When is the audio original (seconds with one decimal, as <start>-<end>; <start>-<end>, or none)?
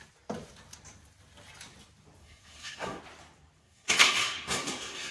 0.0-2.2; 3.0-3.6